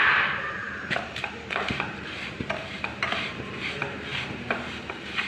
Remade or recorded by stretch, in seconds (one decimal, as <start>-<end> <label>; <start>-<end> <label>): 0.0-5.3 remade